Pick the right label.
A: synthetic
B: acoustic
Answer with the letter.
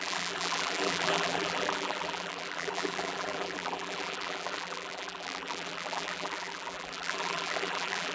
A